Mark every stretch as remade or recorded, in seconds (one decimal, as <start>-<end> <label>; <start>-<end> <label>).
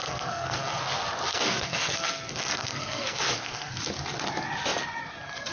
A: 0.0-0.8 remade; 0.8-1.3 recorded; 1.3-3.7 remade; 3.7-5.5 recorded